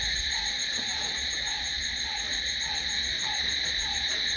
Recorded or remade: remade